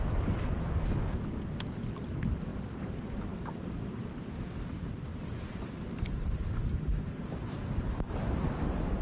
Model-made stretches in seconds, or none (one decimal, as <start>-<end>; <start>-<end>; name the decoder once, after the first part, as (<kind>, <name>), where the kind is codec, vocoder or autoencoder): 2.5-4.4 (vocoder, BigVGAN v2); 5.1-9.0